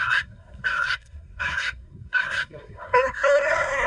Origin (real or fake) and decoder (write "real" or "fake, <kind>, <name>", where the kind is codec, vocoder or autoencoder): fake, codec, SNAC